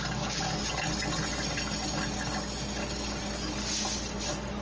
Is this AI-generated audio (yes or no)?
no